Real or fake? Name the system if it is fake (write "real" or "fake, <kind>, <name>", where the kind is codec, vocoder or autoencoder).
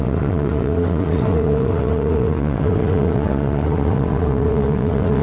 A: fake, vocoder, WaveNeXt